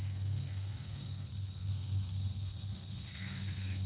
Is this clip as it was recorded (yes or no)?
no